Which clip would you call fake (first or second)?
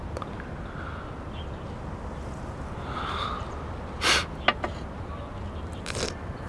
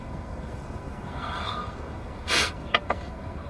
second